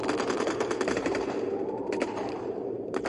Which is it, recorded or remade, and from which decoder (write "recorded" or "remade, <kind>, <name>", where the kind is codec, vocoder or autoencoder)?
remade, vocoder, BigVGAN v2